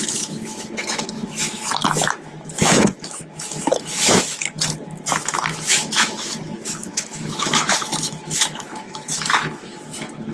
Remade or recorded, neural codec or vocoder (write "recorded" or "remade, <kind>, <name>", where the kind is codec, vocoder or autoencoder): remade, autoencoder, DAC-VAE